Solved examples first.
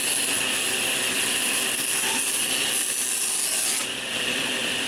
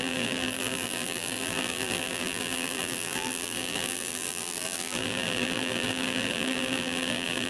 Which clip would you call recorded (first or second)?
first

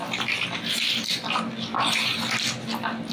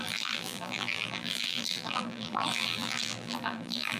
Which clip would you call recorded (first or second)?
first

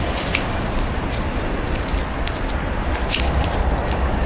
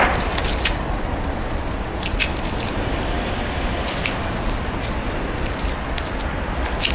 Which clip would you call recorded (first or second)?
second